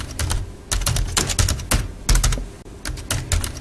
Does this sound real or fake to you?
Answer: real